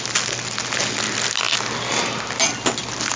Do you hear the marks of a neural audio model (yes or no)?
no